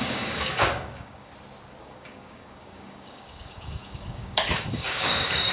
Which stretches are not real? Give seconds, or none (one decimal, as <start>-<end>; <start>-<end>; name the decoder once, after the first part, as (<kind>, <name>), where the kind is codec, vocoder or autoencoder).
0.0-1.3 (codec, DAC); 1.8-5.5